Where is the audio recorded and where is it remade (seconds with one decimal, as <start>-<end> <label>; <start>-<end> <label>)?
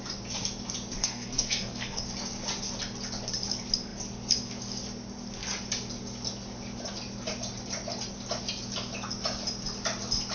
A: 0.0-1.0 recorded; 1.0-2.0 remade; 2.0-10.3 recorded